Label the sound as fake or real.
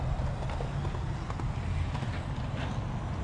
real